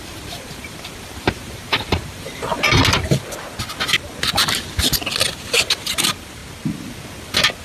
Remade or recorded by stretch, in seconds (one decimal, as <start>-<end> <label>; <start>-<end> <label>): 0.0-2.5 remade; 2.5-5.3 recorded; 5.3-6.4 remade; 6.4-7.6 recorded

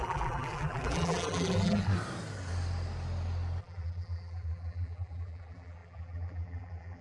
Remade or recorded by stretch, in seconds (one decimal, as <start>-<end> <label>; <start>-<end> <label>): 0.0-1.9 remade; 1.9-3.6 recorded; 3.6-7.0 remade